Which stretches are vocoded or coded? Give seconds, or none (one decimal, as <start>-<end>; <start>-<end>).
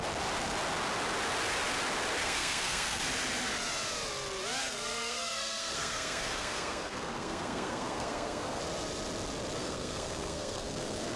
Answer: 2.2-3.0; 4.6-8.6; 9.6-11.2